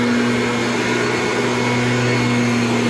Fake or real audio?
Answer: real